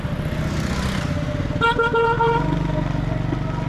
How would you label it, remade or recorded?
recorded